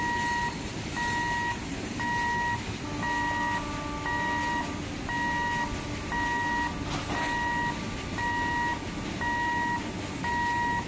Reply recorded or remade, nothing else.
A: recorded